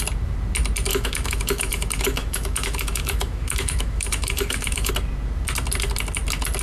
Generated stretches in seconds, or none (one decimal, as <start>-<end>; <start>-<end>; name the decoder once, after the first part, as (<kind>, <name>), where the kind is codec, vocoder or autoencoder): 0.9-4.9 (autoencoder, DAC-VAE)